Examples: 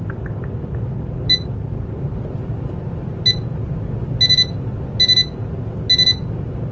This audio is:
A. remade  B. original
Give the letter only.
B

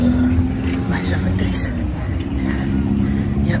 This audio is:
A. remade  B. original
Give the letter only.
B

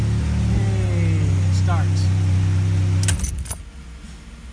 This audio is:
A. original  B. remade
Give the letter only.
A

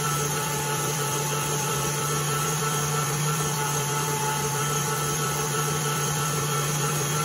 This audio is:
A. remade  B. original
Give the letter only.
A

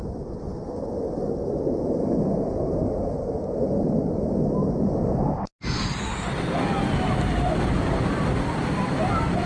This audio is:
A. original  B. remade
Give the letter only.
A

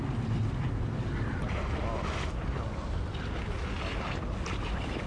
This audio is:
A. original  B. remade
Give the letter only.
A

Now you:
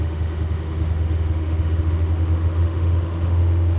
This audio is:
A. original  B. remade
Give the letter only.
B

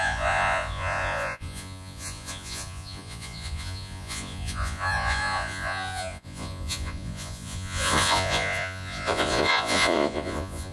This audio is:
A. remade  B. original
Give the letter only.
A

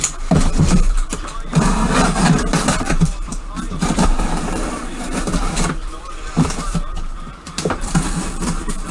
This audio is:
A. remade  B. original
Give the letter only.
A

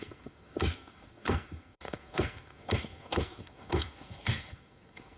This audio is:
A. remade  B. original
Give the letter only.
A